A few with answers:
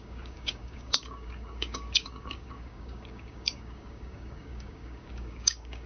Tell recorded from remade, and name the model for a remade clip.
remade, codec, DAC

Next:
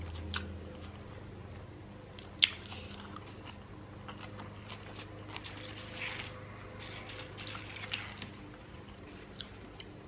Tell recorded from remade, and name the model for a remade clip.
recorded